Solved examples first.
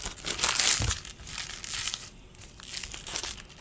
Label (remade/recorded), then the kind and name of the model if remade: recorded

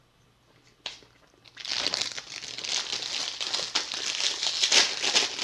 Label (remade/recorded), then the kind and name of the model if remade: recorded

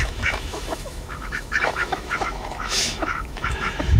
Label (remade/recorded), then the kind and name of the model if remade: remade, autoencoder, DAC-VAE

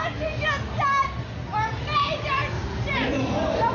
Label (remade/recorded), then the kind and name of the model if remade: recorded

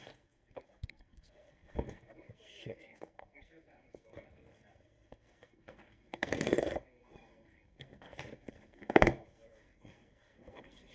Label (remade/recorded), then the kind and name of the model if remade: remade, codec, SNAC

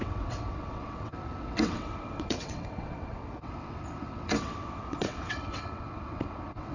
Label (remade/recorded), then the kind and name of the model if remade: remade, vocoder, WaveNeXt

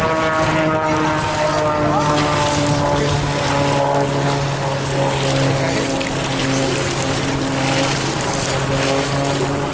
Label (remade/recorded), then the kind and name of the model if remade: recorded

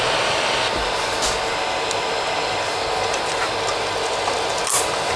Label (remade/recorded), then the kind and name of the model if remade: recorded